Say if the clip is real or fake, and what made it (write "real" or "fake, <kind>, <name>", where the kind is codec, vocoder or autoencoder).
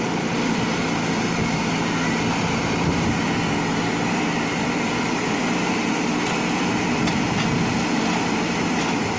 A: real